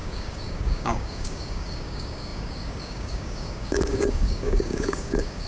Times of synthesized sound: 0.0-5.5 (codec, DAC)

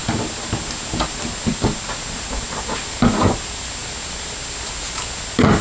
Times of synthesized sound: none